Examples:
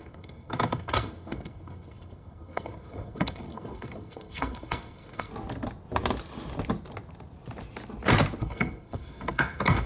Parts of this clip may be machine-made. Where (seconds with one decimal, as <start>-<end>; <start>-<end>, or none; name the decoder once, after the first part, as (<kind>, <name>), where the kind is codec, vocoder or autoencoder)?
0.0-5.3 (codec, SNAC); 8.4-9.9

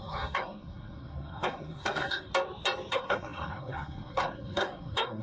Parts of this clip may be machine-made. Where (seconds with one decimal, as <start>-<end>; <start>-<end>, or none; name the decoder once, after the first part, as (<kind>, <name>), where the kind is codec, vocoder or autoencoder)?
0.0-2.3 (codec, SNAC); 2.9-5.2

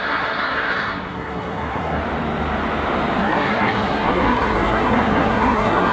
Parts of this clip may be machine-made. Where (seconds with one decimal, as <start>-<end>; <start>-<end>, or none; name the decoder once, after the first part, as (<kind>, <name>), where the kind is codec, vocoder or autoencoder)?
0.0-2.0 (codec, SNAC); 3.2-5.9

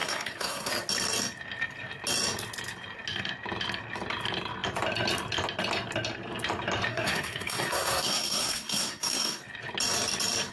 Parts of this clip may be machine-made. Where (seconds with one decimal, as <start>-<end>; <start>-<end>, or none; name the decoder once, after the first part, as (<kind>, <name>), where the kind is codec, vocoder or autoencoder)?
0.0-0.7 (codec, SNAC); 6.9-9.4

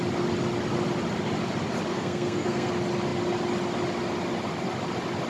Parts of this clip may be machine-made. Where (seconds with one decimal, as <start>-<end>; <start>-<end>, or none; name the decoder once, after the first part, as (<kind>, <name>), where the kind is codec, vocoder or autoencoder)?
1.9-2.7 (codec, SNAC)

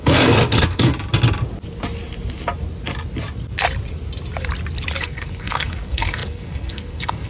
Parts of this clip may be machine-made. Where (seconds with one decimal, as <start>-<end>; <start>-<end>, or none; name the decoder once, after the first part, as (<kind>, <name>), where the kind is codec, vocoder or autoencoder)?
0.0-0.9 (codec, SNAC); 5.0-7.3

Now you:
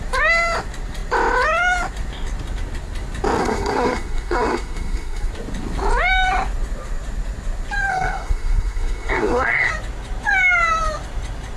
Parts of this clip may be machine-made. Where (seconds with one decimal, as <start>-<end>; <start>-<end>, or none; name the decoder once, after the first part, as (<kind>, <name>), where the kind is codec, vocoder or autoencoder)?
3.4-5.3 (codec, SNAC); 7.9-9.7

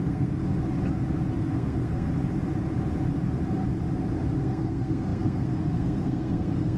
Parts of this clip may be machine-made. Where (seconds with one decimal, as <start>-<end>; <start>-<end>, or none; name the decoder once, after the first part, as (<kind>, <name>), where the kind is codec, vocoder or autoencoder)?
0.0-0.4 (codec, SNAC); 1.4-2.1; 4.4-6.8